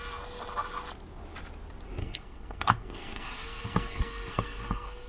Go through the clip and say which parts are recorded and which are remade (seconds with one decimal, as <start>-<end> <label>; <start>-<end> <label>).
0.0-2.0 recorded; 2.0-5.1 remade